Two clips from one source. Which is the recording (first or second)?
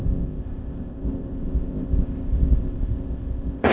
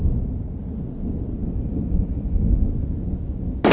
second